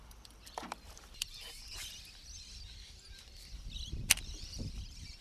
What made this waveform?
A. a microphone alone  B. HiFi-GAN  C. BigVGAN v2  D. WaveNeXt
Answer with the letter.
C